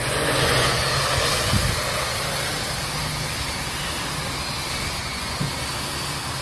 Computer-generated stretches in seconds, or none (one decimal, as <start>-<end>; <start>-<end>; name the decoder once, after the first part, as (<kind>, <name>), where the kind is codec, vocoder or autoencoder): 0.0-0.8 (vocoder, Vocos); 5.0-5.5